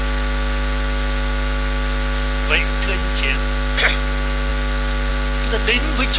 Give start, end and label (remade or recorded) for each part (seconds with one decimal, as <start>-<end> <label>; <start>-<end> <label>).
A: 0.0-6.2 recorded